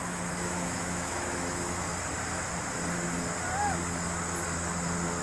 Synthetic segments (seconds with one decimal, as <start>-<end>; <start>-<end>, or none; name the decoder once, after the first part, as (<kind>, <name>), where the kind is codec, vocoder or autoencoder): 0.0-1.9 (autoencoder, DAC-VAE)